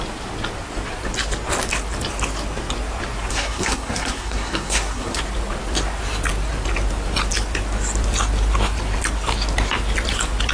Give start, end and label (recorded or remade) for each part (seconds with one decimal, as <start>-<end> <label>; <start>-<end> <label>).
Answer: 0.0-3.3 recorded; 3.3-5.2 remade; 5.2-10.5 recorded

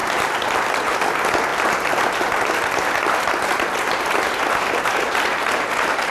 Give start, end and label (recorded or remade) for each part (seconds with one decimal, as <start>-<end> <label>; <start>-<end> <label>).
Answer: 0.0-0.7 remade; 0.7-1.5 recorded; 1.5-4.9 remade; 4.9-6.1 recorded

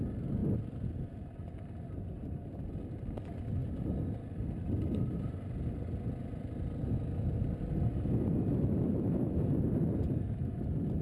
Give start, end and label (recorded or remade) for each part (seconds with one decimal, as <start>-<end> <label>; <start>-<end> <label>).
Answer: 0.0-11.0 recorded

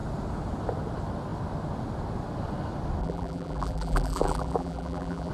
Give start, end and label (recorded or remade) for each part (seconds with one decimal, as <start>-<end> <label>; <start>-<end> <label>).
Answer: 0.0-3.0 recorded; 3.0-5.3 remade

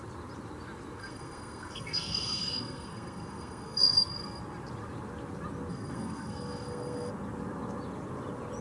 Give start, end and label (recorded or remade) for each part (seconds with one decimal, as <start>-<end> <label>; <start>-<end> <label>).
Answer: 0.0-1.0 recorded; 1.0-4.4 remade; 4.4-5.7 recorded; 5.7-7.1 remade; 7.1-8.6 recorded

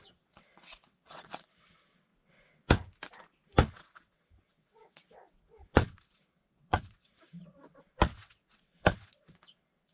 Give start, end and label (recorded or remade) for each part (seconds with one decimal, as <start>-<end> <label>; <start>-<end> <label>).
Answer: 0.0-2.1 remade; 2.1-3.7 recorded; 3.7-9.9 remade